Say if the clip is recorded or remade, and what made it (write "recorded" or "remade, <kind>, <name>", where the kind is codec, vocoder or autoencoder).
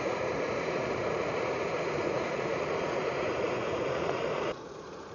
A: remade, vocoder, Vocos